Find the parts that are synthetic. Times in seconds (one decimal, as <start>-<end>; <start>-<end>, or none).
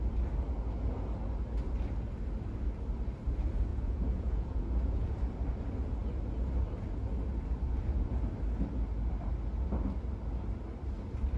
3.7-5.1